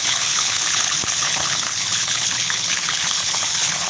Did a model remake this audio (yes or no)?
yes